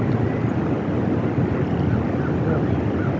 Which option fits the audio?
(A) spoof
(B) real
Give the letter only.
B